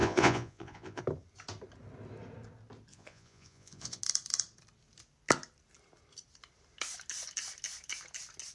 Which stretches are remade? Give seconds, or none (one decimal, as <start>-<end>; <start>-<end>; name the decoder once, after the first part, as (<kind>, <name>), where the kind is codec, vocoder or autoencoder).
0.0-1.0 (vocoder, Vocos); 2.9-4.0